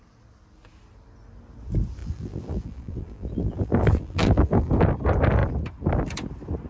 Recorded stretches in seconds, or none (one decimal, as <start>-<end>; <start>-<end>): 0.0-2.0; 4.7-6.7